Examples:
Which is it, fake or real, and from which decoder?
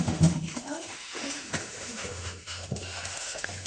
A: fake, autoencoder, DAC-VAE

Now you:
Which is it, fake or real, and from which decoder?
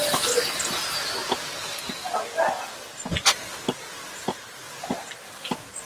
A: real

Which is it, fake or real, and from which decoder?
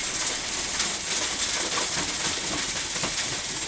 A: real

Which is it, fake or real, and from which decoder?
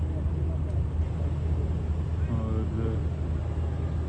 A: real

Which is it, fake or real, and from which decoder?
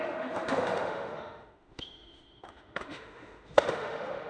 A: fake, autoencoder, DAC-VAE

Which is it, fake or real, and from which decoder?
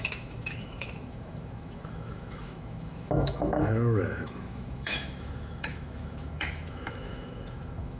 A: fake, autoencoder, DAC-VAE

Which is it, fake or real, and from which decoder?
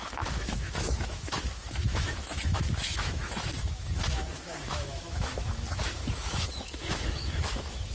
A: fake, autoencoder, DAC-VAE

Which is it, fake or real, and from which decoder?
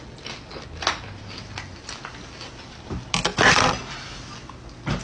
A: real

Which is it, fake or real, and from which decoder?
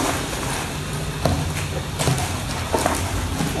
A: real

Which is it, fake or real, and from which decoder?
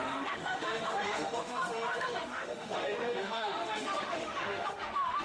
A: fake, autoencoder, DAC-VAE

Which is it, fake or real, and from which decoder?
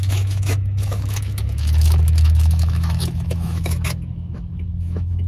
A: fake, autoencoder, DAC-VAE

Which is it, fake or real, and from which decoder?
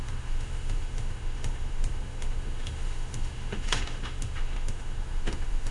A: fake, autoencoder, DAC-VAE